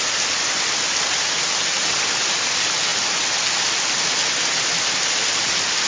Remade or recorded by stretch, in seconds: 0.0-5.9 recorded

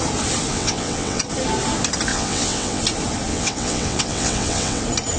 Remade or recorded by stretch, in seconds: 0.0-0.5 recorded; 0.5-1.2 remade; 1.2-2.1 recorded; 2.1-2.8 remade; 2.8-3.3 recorded; 3.3-4.8 remade; 4.8-5.2 recorded